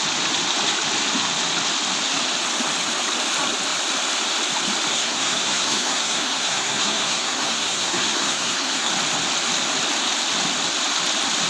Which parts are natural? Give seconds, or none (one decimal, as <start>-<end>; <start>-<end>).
0.0-4.9; 8.9-11.5